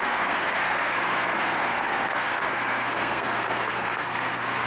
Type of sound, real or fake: fake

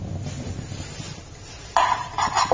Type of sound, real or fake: real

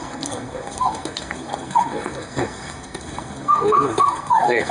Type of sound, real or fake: fake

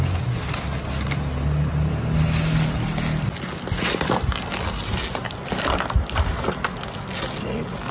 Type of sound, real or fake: real